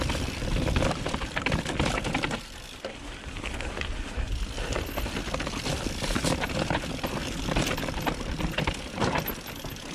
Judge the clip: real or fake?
real